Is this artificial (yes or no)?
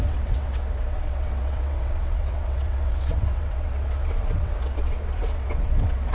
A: yes